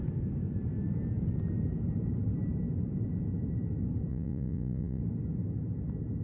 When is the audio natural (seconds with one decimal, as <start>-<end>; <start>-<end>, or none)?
0.0-4.1; 5.0-6.2